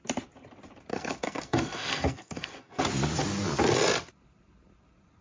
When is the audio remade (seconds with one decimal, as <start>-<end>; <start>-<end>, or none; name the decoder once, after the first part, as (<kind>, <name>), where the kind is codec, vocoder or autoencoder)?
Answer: 0.9-2.8 (codec, SNAC)

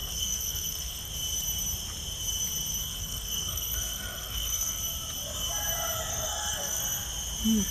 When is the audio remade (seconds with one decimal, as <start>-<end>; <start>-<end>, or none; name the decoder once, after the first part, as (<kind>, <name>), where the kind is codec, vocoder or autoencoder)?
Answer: 0.0-1.1 (codec, SNAC); 2.8-4.8; 6.1-6.8

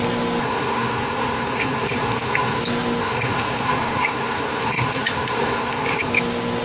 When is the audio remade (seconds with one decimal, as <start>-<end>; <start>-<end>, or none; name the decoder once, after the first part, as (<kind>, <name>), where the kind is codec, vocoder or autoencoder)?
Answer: 0.4-2.6 (codec, SNAC); 3.0-6.1

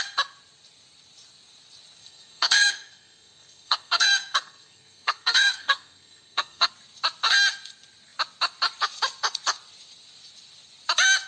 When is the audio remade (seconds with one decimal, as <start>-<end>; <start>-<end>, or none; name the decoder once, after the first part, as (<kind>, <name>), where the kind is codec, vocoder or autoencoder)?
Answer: 2.0-6.7 (codec, SNAC)